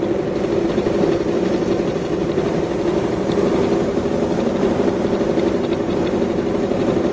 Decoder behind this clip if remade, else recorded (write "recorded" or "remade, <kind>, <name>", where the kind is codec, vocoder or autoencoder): recorded